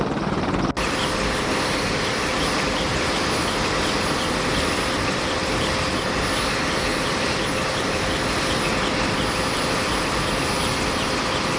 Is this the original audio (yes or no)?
yes